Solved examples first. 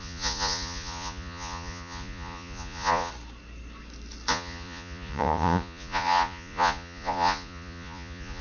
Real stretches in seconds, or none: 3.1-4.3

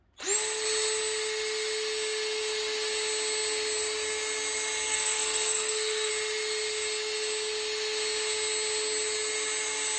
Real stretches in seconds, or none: 0.0-4.9; 6.1-10.0

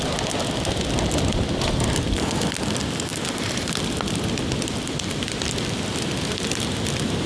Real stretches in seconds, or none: 0.0-7.3

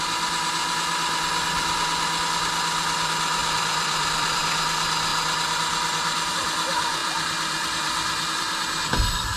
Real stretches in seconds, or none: 0.0-3.4; 4.4-7.0; 8.3-9.4

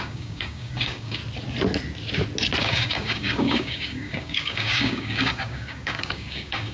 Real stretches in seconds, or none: 1.2-2.6

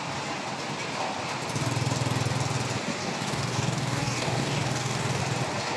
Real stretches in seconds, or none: 0.0-3.0; 5.2-5.8

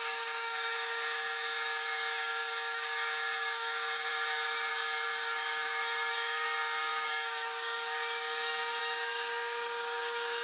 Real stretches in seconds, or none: none

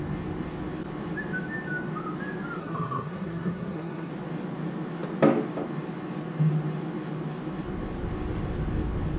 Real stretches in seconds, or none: 0.0-2.6; 4.1-9.2